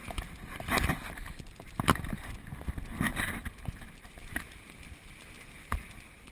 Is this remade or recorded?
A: recorded